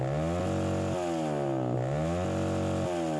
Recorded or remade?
recorded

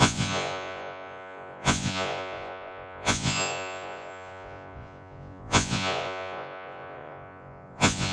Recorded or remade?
remade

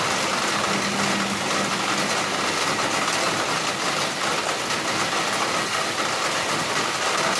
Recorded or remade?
recorded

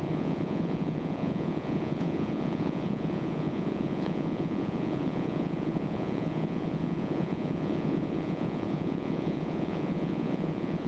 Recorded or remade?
remade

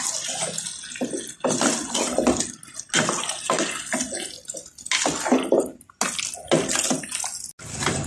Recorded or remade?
recorded